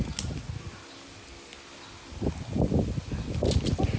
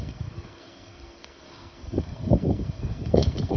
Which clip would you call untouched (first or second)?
first